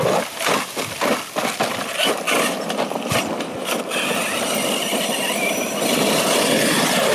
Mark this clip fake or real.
real